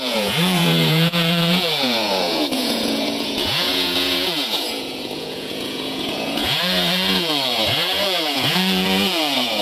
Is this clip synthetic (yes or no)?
yes